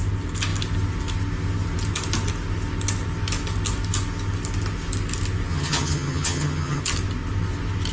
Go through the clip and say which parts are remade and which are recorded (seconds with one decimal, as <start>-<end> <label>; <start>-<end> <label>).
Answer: 0.0-5.5 recorded; 5.5-6.8 remade; 6.8-7.9 recorded